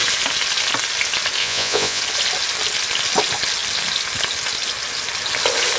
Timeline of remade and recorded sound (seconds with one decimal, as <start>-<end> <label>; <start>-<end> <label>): 0.0-1.4 recorded; 1.4-2.0 remade; 2.0-5.8 recorded